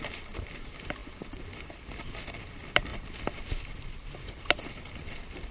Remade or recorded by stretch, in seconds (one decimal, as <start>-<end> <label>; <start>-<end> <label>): 0.0-5.5 recorded